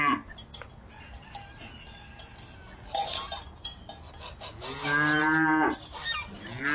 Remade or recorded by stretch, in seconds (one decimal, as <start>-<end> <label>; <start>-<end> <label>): 0.0-5.2 recorded; 5.2-6.0 remade; 6.0-6.7 recorded